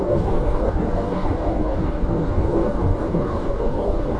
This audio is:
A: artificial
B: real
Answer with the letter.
A